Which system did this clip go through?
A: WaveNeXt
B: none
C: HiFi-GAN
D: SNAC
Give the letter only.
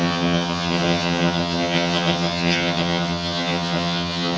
C